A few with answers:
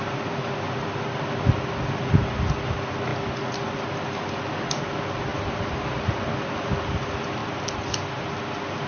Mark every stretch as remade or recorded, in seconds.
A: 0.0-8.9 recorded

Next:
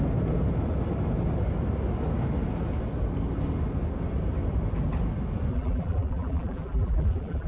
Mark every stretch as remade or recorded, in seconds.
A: 0.0-5.5 recorded; 5.5-7.5 remade

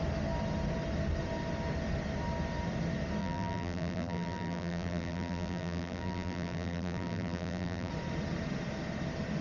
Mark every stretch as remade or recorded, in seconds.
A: 0.0-3.2 recorded; 3.2-7.9 remade; 7.9-9.4 recorded